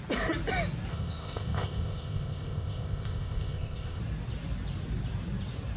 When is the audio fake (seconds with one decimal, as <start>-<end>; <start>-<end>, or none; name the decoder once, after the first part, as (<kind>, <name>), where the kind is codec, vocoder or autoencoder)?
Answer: 0.9-4.0 (codec, ZipCodec)